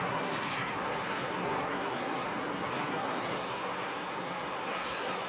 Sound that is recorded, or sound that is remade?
remade